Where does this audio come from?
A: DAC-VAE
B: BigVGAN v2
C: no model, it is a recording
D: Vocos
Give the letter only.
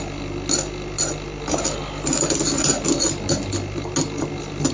C